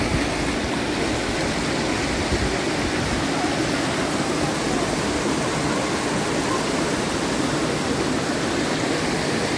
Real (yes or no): yes